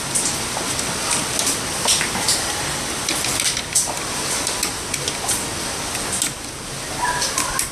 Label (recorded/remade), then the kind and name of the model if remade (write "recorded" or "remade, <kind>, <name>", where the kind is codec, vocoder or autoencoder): recorded